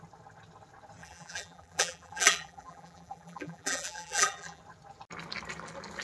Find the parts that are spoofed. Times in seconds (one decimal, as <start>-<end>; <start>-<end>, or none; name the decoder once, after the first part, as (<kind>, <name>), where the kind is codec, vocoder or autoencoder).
1.0-4.6 (vocoder, BigVGAN v2)